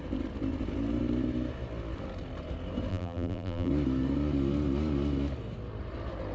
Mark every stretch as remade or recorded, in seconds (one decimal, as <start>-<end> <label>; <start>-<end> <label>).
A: 0.0-2.9 recorded; 2.9-3.7 remade; 3.7-6.3 recorded